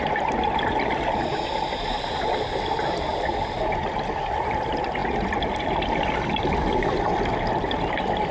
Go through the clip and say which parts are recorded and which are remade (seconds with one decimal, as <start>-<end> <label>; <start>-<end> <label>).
0.0-8.3 recorded